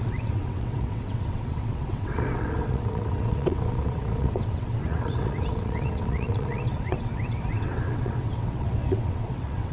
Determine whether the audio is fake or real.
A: fake